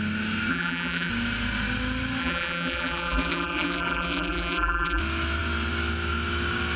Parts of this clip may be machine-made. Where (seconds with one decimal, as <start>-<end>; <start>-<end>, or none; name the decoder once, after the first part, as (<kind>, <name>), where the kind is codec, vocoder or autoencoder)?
0.5-1.1 (vocoder, BigVGAN v2); 2.2-5.0